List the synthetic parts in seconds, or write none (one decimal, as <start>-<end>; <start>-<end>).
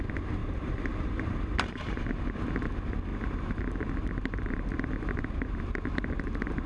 0.4-2.2; 3.1-3.6